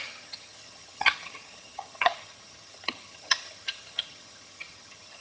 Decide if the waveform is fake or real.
fake